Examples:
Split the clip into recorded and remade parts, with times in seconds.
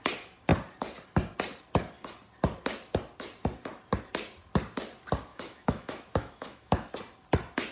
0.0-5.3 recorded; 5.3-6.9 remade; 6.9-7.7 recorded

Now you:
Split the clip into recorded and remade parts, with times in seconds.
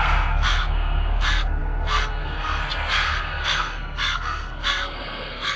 0.0-5.6 remade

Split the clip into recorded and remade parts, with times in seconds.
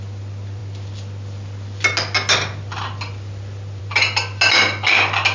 0.0-5.3 recorded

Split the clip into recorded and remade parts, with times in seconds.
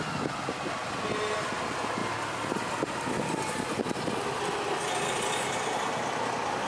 0.0-6.7 recorded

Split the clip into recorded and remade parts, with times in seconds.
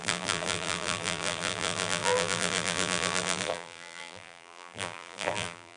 0.0-5.8 remade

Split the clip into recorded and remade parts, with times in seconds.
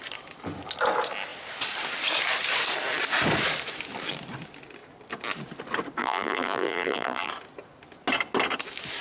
0.0-6.0 recorded; 6.0-7.3 remade; 7.3-9.0 recorded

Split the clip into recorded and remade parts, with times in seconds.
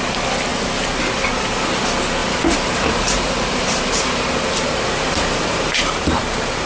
0.0-2.2 recorded; 2.2-6.2 remade; 6.2-6.7 recorded